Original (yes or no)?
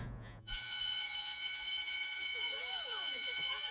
no